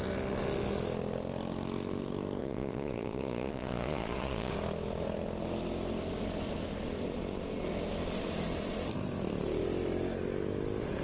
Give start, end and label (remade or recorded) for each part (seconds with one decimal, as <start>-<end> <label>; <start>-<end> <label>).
0.0-2.4 recorded; 2.4-4.5 remade; 4.5-11.0 recorded